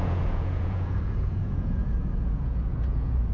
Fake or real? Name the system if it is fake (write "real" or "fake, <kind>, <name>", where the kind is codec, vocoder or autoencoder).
fake, vocoder, Vocos